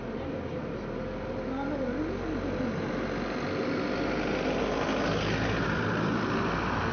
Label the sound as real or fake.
real